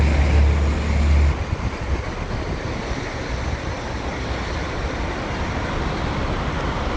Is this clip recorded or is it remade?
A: recorded